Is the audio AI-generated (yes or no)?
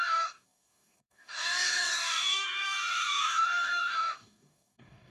yes